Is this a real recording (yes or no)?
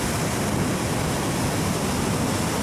yes